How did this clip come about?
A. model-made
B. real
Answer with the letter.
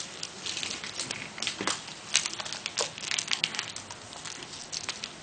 B